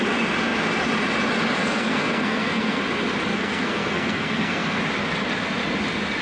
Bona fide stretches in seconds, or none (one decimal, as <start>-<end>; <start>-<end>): 0.0-1.6; 2.8-3.3; 4.8-6.2